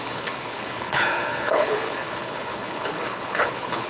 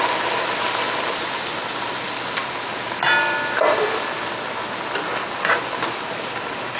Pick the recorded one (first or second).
second